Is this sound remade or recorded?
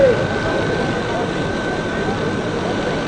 recorded